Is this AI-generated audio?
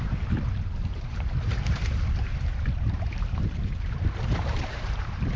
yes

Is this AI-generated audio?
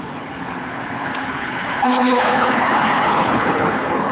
yes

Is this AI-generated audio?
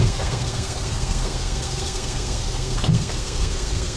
yes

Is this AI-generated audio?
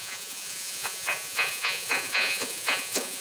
yes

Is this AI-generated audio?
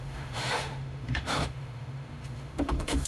yes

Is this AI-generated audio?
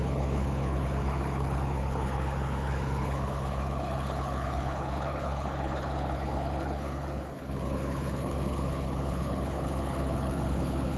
yes